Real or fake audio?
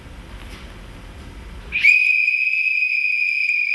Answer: real